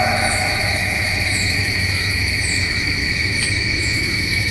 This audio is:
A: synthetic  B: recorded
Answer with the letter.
A